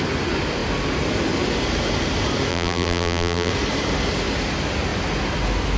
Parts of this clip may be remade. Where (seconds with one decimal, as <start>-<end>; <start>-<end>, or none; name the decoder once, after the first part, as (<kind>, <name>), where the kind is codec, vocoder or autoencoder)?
2.5-3.5 (vocoder, BigVGAN v2)